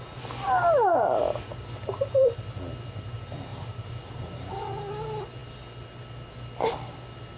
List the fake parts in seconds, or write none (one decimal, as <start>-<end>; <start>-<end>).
3.5-4.5